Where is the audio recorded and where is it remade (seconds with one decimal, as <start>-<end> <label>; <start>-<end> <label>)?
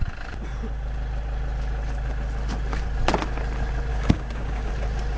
0.0-3.9 recorded; 3.9-4.7 remade; 4.7-5.2 recorded